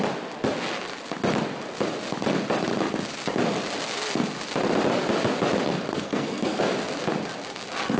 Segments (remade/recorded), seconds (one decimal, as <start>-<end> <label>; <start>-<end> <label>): 0.0-5.9 recorded; 5.9-6.6 remade; 6.6-8.0 recorded